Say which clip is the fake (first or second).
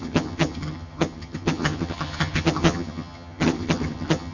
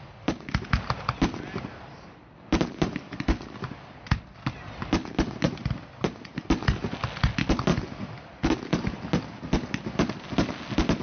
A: first